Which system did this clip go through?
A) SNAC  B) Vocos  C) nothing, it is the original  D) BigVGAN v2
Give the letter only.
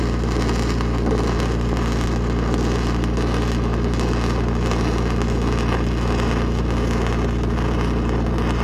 C